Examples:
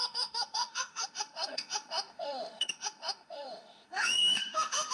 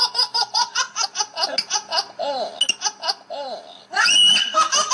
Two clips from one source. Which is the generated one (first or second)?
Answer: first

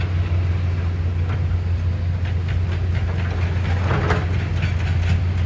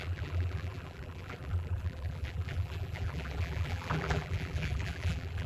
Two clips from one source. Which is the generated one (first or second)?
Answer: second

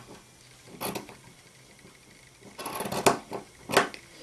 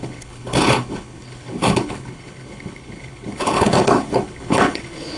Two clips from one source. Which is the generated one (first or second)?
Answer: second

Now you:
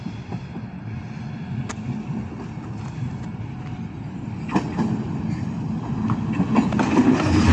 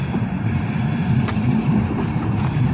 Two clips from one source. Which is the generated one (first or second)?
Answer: second